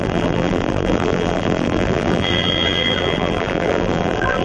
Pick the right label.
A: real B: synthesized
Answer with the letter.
B